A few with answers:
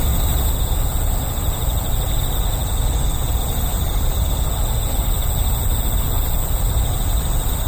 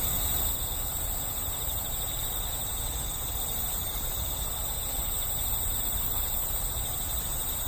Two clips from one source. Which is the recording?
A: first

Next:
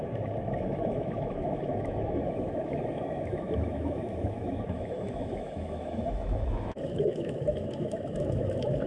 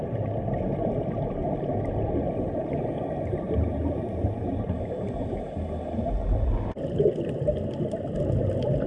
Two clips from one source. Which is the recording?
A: second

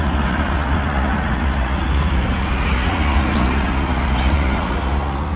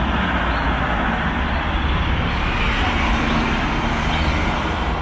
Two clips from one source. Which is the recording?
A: second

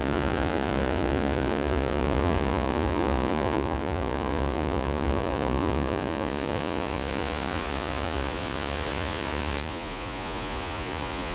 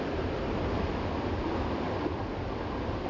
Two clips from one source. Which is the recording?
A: second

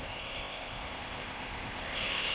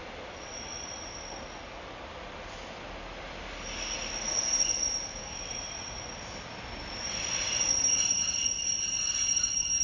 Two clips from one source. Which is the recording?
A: second